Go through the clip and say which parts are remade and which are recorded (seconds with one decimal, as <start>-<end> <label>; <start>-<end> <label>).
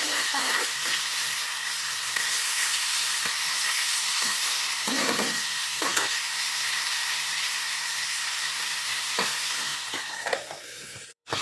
0.0-11.4 remade